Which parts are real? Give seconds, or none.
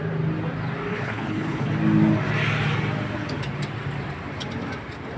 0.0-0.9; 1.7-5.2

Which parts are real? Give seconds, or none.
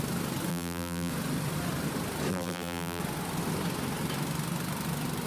0.0-0.5; 1.1-2.3; 3.0-5.3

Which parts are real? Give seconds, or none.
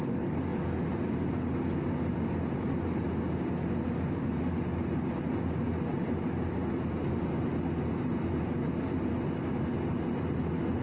0.0-10.8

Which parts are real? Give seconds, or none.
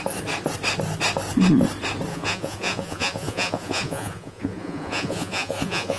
0.0-2.1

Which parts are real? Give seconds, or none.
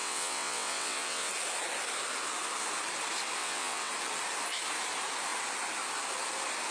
1.3-3.4; 3.9-6.7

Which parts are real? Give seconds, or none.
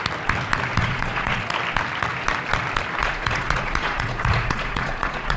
0.0-0.8; 1.4-3.0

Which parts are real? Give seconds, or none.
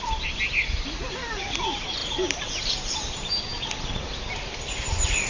0.0-5.3